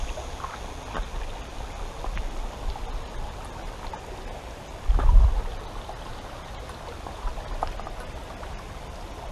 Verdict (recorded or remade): recorded